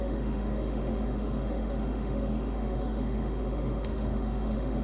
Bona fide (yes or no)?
no